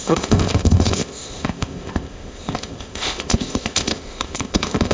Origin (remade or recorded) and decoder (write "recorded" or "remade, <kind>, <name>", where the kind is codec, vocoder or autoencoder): remade, codec, ZipCodec